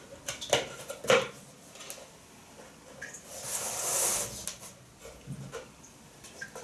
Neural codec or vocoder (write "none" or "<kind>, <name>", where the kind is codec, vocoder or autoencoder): none